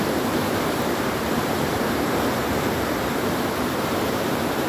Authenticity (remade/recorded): remade